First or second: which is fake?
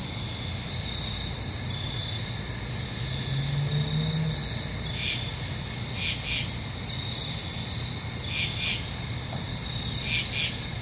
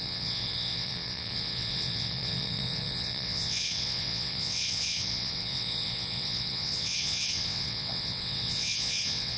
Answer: second